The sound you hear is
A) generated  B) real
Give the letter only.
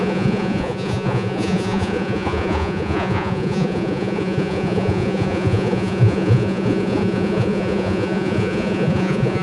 A